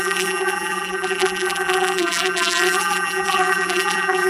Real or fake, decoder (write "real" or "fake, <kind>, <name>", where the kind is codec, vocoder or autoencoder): fake, vocoder, BigVGAN v2